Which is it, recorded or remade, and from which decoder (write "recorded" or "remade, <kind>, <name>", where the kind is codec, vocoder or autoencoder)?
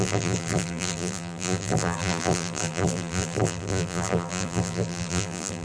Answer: remade, vocoder, BigVGAN v2